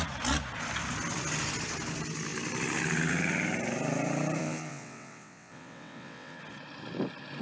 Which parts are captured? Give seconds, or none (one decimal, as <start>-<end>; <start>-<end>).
0.0-4.4; 6.4-7.4